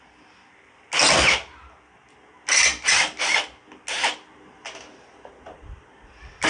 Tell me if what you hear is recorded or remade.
recorded